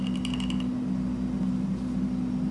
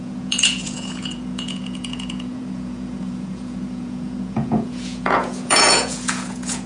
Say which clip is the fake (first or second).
second